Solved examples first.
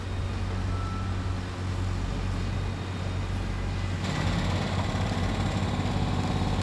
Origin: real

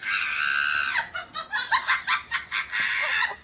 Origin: real